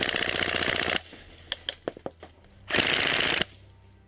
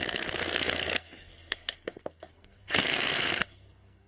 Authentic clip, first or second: first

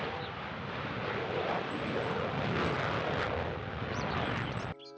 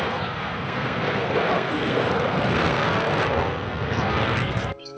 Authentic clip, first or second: first